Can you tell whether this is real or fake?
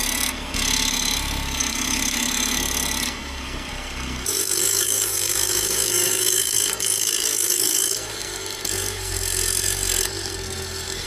fake